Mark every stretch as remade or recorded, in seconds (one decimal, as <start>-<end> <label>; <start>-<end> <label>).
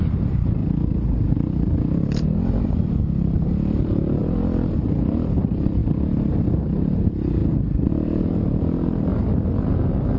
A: 0.0-0.6 remade; 0.6-2.7 recorded; 2.7-5.8 remade; 5.8-6.3 recorded; 6.3-7.4 remade; 7.4-7.9 recorded; 7.9-10.2 remade